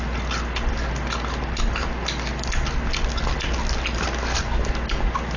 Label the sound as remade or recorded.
recorded